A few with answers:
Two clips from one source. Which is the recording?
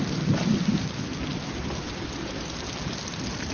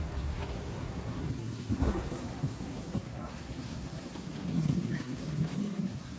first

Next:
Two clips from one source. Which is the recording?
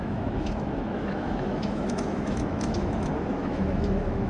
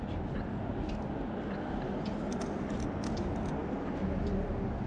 second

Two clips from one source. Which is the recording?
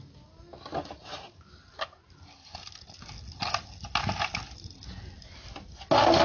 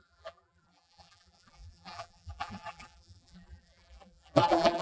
first